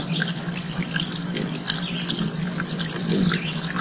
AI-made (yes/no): no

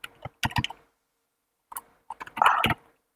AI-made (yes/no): no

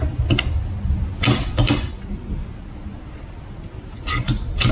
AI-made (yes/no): no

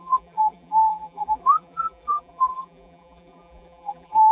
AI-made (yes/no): yes